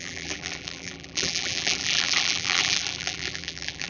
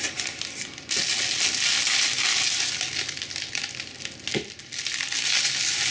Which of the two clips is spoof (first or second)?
first